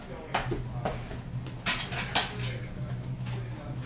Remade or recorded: recorded